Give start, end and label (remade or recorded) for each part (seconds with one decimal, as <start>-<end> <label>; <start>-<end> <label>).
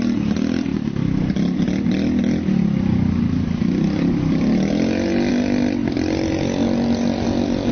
0.0-7.7 recorded